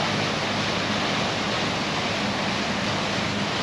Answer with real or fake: real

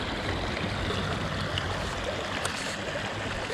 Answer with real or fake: real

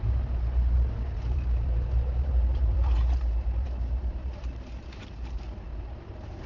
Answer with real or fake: fake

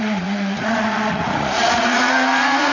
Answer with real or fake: fake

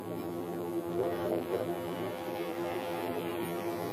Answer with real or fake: fake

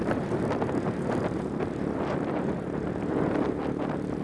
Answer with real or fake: real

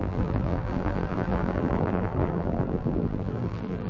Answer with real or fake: fake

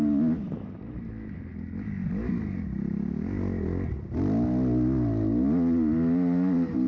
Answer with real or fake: real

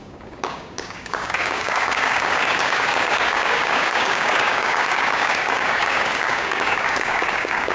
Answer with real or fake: fake